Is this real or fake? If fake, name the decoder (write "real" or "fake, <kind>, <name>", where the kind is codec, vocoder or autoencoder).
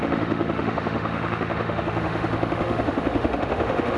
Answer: fake, autoencoder, DAC-VAE